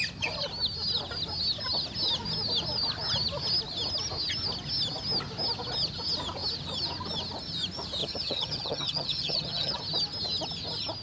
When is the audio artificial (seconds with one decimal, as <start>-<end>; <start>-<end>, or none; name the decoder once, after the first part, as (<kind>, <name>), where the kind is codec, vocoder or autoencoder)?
8.0-9.8 (vocoder, HiFi-GAN)